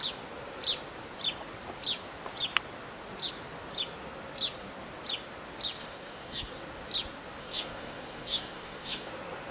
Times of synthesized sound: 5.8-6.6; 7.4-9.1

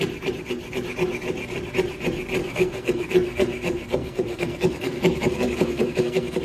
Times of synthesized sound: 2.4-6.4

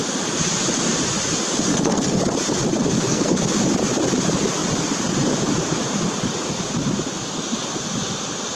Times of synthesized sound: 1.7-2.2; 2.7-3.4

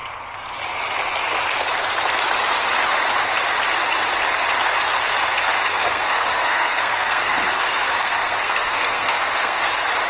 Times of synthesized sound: 5.7-9.7

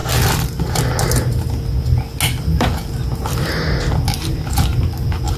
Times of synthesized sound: none

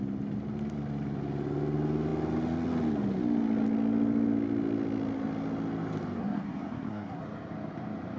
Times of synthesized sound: 6.2-7.2

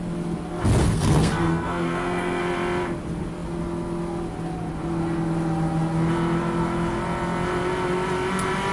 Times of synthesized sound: 0.8-2.4